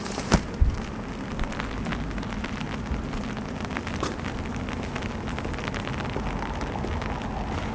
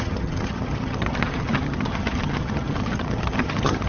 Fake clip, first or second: second